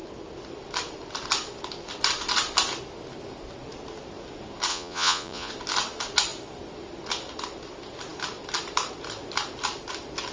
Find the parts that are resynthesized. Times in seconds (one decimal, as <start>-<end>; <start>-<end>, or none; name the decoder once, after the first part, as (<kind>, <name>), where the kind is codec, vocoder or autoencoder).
4.7-5.5 (vocoder, Vocos)